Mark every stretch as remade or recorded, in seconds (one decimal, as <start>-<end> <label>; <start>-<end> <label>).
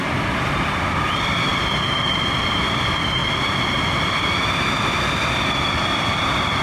0.0-1.5 remade; 1.5-2.4 recorded; 2.4-3.2 remade; 3.2-5.3 recorded; 5.3-6.6 remade